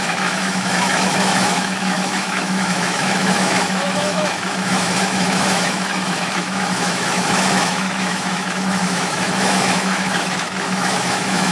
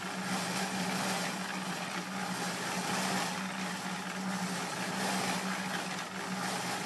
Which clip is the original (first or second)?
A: second